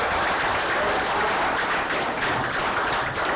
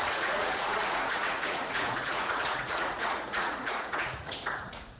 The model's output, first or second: second